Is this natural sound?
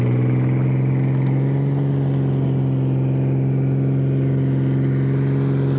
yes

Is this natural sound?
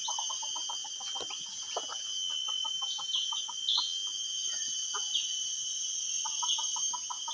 yes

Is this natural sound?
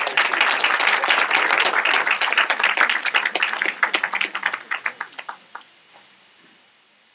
no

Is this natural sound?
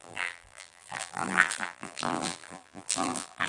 no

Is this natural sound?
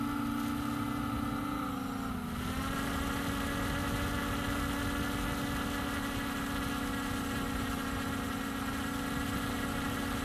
yes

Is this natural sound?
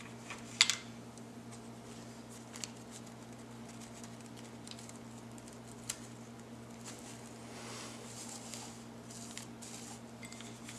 yes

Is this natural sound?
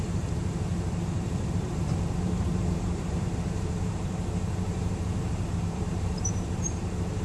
no